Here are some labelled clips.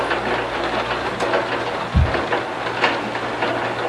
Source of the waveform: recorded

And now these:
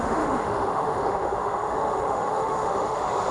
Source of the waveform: remade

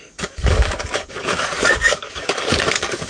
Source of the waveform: remade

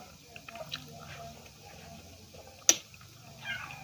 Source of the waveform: recorded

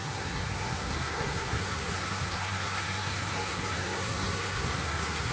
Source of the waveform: remade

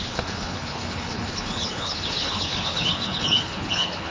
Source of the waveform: remade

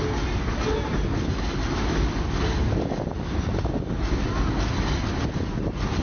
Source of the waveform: recorded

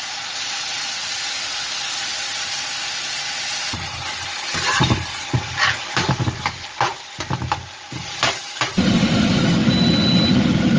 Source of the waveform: recorded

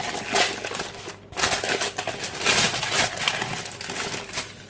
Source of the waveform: recorded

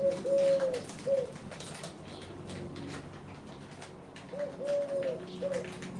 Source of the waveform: recorded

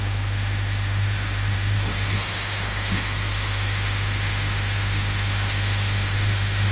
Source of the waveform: remade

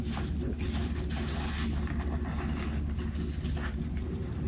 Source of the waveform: recorded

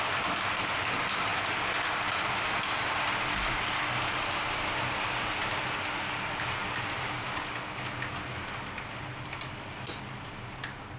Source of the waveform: recorded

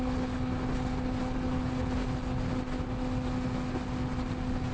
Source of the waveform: recorded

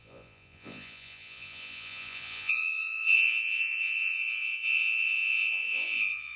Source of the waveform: remade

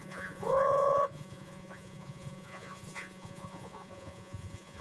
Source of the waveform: remade